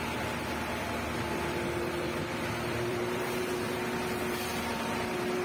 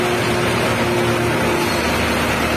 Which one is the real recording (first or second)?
second